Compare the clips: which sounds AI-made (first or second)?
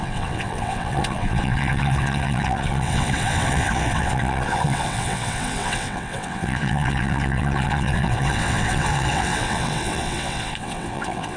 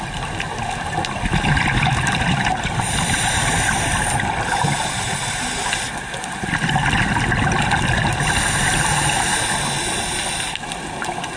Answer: first